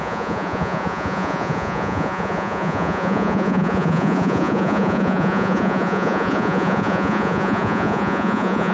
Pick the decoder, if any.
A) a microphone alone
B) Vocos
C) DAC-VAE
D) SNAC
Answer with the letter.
B